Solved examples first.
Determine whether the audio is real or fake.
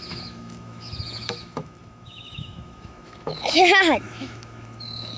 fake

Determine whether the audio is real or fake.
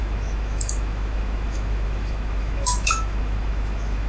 fake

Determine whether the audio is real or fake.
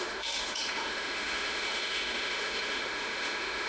fake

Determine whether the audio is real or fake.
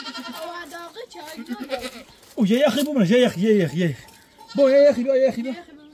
real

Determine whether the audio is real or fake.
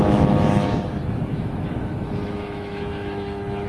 fake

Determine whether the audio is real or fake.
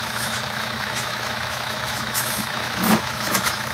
fake